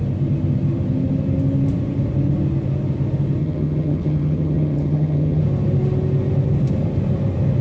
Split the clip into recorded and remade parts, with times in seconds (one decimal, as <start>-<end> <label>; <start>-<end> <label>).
0.0-3.4 recorded; 3.4-5.4 remade; 5.4-7.6 recorded